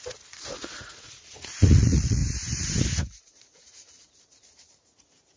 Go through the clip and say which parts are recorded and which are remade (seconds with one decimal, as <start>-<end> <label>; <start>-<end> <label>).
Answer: 0.0-2.2 remade; 2.2-3.2 recorded; 3.2-5.4 remade